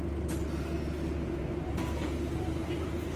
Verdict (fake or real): real